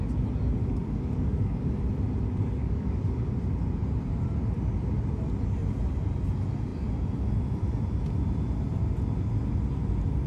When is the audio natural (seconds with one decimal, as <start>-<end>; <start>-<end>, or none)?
0.0-0.6; 1.7-2.4; 3.3-10.3

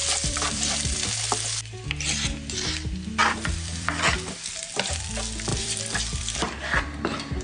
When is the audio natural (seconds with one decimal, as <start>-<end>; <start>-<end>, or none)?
1.8-3.2; 5.1-5.5; 7.0-7.4